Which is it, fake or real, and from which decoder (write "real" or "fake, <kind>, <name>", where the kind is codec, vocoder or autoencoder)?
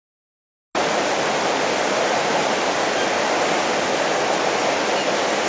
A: real